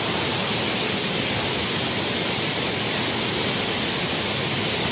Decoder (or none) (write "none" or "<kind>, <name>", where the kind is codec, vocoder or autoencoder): none